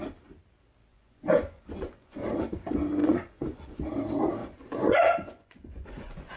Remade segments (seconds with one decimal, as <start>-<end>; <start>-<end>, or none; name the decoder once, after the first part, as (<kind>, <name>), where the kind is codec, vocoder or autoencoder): 0.9-2.5 (vocoder, Vocos); 3.0-3.8; 4.4-6.4